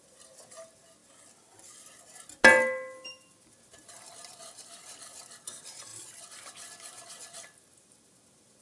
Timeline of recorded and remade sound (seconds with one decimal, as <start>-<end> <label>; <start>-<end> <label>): 0.0-1.0 remade; 1.0-3.1 recorded; 3.1-4.8 remade; 4.8-5.4 recorded; 5.4-8.6 remade